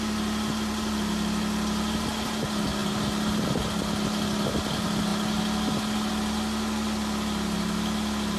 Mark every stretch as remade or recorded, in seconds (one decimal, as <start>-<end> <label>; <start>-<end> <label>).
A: 0.0-8.4 recorded